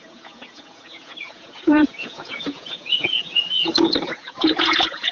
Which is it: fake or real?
fake